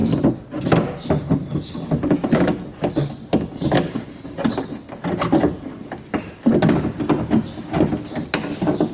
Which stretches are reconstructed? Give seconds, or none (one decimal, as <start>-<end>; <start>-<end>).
none